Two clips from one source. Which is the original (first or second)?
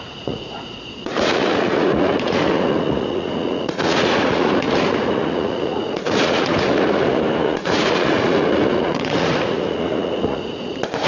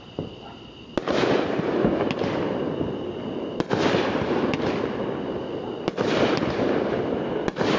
second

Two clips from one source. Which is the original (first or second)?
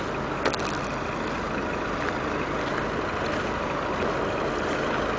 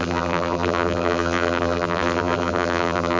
first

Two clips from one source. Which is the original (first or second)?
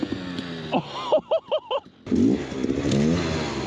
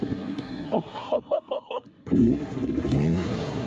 first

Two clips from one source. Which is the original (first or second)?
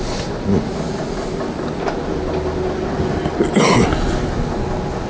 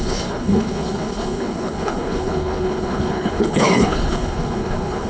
first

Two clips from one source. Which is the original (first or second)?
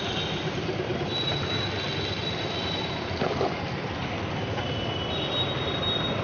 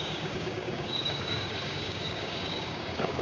first